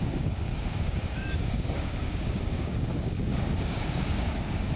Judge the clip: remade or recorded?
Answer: remade